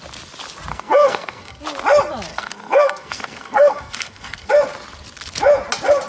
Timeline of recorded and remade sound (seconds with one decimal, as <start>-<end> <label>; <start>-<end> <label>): 0.0-0.7 recorded; 0.7-1.6 remade; 1.6-2.3 recorded; 2.3-4.5 remade; 4.5-6.1 recorded